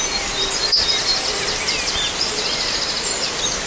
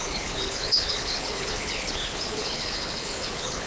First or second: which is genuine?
first